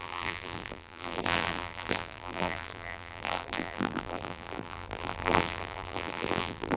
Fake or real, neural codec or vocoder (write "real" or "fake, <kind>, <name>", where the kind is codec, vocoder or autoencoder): fake, vocoder, BigVGAN v2